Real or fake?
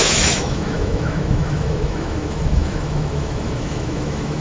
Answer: fake